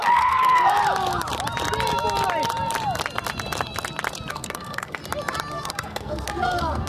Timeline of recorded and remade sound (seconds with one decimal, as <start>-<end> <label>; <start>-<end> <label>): 0.0-0.8 remade; 0.8-4.3 recorded; 4.3-5.0 remade; 5.0-5.5 recorded; 5.5-6.9 remade